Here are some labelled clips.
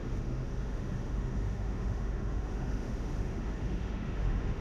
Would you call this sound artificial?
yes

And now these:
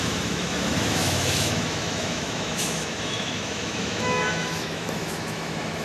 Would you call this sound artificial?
yes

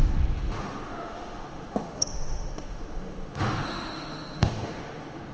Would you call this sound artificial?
yes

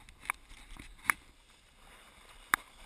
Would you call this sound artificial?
no